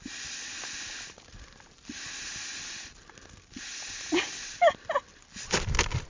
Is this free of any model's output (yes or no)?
yes